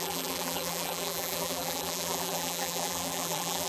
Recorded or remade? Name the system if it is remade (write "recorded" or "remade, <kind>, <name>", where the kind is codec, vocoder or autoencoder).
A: remade, vocoder, BigVGAN v2